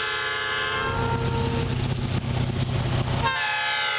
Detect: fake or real real